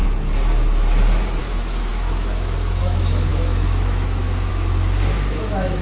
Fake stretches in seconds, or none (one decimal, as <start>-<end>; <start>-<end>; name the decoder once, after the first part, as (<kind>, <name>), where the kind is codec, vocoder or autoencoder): 1.4-5.8 (autoencoder, DAC-VAE)